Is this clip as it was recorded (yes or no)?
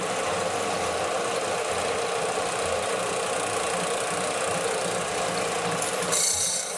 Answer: yes